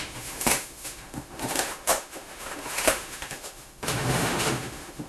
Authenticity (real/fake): fake